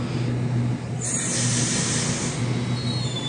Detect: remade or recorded recorded